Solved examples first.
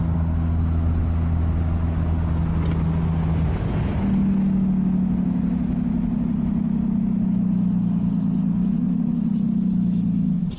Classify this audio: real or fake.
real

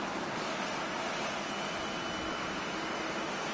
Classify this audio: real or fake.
real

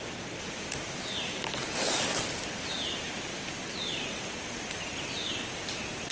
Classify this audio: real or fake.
real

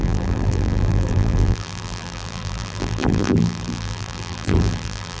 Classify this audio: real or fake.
fake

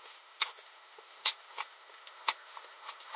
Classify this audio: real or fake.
fake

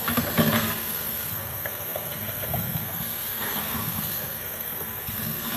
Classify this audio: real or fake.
fake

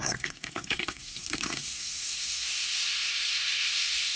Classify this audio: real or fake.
fake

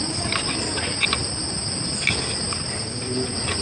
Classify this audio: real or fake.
real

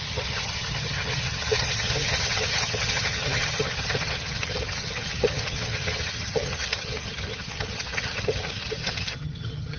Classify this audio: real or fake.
fake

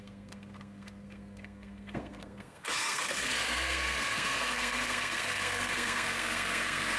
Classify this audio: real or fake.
fake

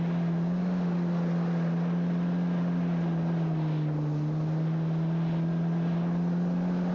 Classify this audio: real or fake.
real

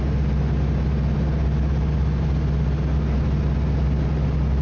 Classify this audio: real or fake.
real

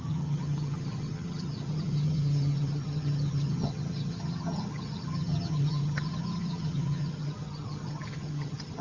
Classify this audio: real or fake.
fake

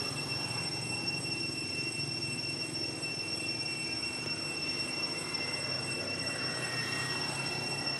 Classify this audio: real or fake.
real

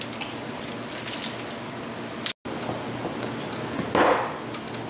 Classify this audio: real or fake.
real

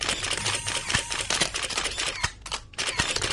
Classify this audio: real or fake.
fake